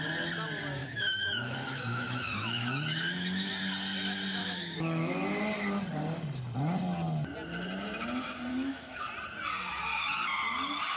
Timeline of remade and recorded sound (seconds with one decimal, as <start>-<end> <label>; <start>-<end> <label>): 0.0-0.8 recorded; 0.8-3.5 remade; 3.5-4.4 recorded; 4.4-5.1 remade; 5.1-8.5 recorded; 8.5-9.1 remade; 9.1-11.0 recorded